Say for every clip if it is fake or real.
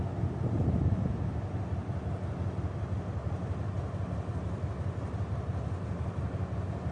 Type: real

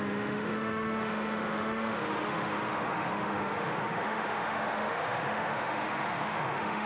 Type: fake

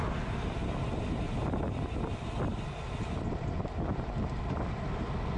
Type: real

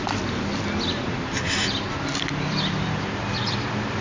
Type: real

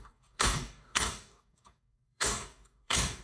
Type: fake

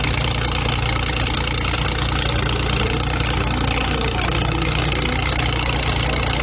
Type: real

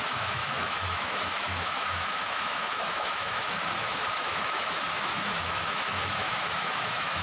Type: fake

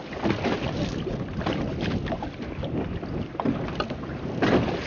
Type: real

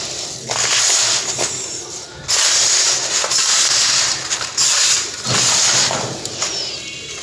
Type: real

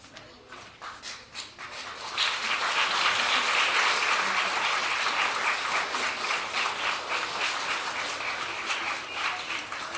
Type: real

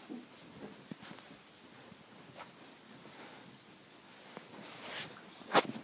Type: real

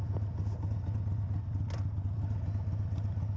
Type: real